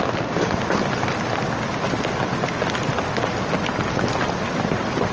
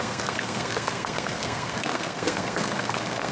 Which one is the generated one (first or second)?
second